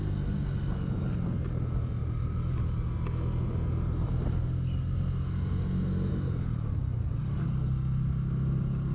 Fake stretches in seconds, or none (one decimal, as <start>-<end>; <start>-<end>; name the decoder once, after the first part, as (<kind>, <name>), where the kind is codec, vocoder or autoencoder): none